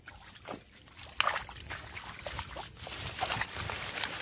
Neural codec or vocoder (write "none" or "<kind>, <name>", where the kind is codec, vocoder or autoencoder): none